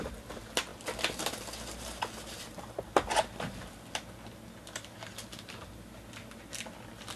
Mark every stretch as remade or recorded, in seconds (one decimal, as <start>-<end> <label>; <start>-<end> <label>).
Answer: 0.0-7.2 recorded